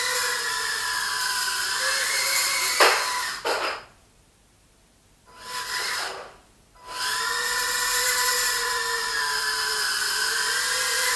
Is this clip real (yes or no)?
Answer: no